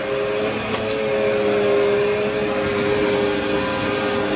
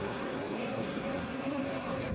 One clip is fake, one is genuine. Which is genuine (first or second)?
first